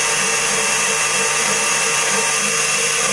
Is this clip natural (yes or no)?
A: no